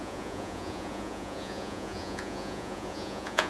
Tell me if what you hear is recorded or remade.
remade